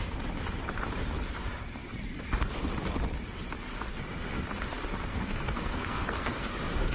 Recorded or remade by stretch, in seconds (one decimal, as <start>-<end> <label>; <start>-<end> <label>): 0.0-5.1 recorded; 5.1-6.5 remade; 6.5-6.9 recorded